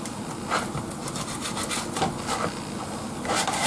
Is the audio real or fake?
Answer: real